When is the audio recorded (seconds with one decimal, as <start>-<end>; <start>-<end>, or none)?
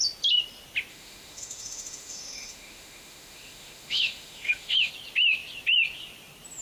0.0-0.9; 4.9-6.6